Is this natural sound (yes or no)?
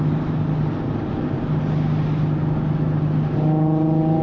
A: yes